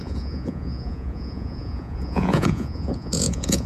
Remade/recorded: remade